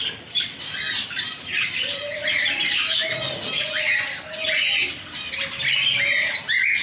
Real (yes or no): yes